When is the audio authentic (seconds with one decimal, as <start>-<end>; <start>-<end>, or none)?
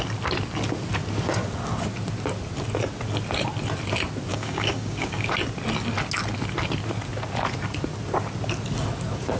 0.0-4.3; 5.3-9.4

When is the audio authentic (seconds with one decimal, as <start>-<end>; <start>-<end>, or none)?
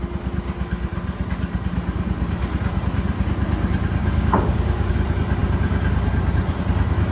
0.0-4.0; 4.9-7.1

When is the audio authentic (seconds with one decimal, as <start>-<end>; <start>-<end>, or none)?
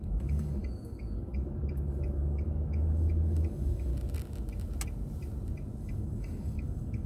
3.9-5.8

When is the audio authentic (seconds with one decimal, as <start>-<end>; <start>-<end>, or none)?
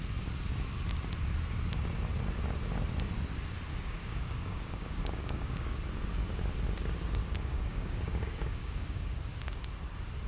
0.0-3.7; 5.8-7.2; 9.2-10.3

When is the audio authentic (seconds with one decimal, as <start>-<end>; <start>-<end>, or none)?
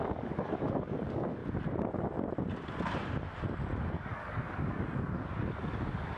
1.4-3.9